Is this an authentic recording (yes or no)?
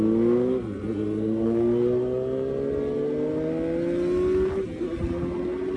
yes